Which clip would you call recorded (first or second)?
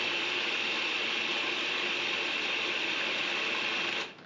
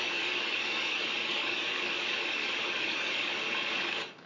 first